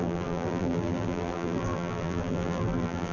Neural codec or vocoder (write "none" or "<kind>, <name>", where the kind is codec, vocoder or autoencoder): vocoder, BigVGAN v2